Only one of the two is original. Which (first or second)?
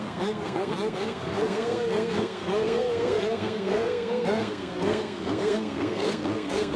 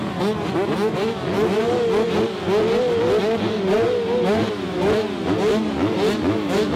second